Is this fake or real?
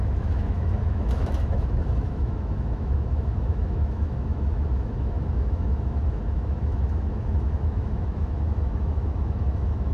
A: fake